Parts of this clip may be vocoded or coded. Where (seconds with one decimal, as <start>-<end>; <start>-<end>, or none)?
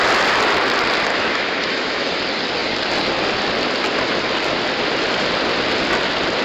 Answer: 1.1-2.2